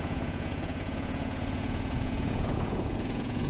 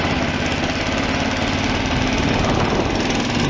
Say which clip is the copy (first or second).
first